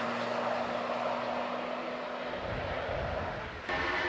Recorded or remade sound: recorded